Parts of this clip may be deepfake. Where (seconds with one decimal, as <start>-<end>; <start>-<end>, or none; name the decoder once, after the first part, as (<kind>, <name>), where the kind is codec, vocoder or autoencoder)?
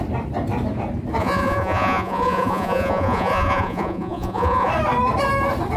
1.2-4.7 (vocoder, Vocos)